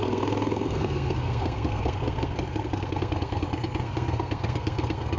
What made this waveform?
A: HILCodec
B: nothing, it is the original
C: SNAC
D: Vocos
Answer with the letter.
C